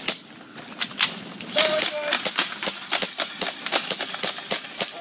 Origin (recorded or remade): recorded